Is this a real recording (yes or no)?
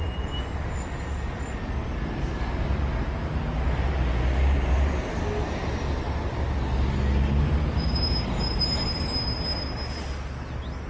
yes